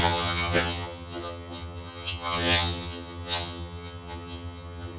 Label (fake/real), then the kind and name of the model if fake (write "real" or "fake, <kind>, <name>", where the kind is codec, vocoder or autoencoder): fake, vocoder, HiFi-GAN